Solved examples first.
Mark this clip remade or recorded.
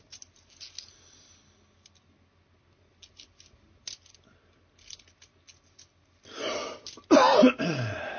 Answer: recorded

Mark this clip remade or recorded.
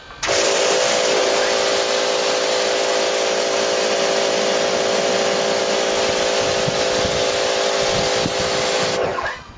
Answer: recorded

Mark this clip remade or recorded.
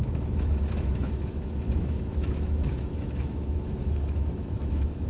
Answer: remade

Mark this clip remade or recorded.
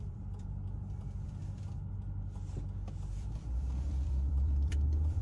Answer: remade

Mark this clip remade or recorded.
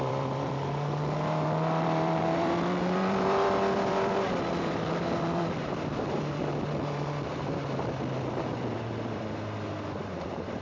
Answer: remade